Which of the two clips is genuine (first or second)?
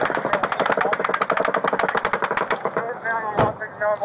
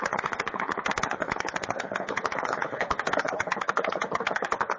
first